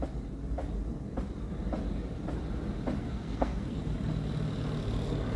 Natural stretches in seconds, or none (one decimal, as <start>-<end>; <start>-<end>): 0.0-3.0; 3.8-5.4